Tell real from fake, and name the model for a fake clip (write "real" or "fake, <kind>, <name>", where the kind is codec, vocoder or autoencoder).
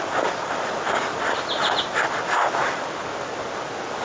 real